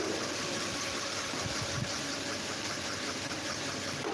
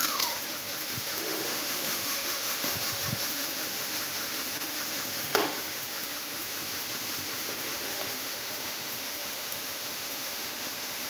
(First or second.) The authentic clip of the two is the first